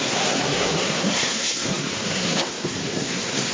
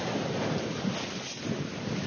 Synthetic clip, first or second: first